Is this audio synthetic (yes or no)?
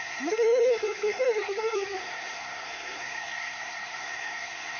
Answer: yes